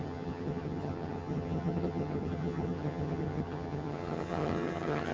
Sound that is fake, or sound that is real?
fake